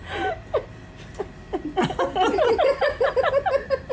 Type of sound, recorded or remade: recorded